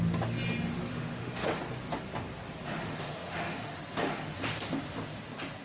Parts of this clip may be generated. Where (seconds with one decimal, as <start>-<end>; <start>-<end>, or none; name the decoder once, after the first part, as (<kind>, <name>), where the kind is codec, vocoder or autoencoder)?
0.9-1.6 (autoencoder, DAC-VAE); 2.8-3.8